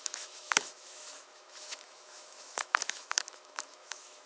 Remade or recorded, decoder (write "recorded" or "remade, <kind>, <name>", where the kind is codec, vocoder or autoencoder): remade, autoencoder, DAC-VAE